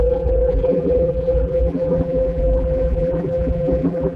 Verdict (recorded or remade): remade